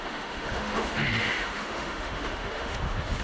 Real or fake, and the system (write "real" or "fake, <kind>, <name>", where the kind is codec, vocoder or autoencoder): fake, autoencoder, DAC-VAE